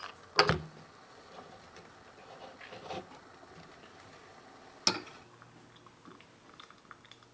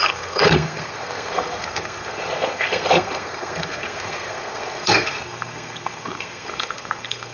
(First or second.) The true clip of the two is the first